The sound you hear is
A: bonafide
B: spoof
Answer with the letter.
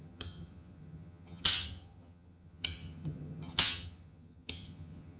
B